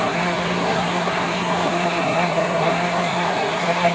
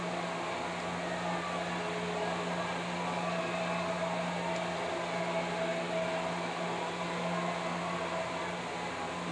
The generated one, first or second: first